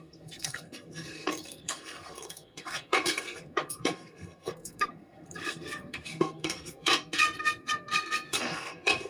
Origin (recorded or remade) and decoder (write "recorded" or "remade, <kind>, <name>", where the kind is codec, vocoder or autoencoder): remade, codec, SNAC